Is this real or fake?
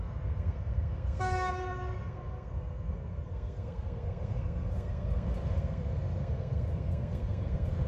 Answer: fake